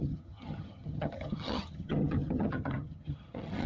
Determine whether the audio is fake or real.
fake